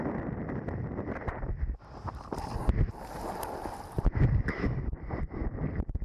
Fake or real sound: real